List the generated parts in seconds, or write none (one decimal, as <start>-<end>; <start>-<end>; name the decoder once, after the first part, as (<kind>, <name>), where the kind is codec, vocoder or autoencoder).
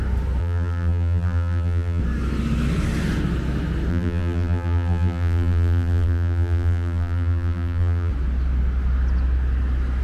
0.4-2.0 (vocoder, BigVGAN v2); 3.9-8.1